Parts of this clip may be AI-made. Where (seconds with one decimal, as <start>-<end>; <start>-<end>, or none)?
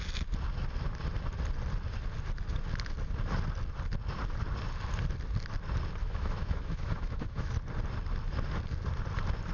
6.0-7.5